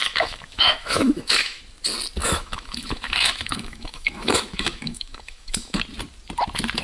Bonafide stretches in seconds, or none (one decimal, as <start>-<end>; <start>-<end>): 1.6-2.2; 5.8-6.8